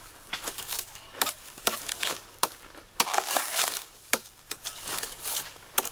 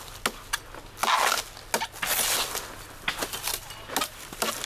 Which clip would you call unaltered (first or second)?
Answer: second